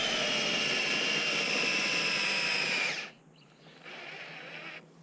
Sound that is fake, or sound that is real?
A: real